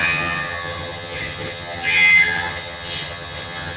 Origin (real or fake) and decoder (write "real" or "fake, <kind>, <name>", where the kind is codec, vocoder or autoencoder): fake, vocoder, HiFi-GAN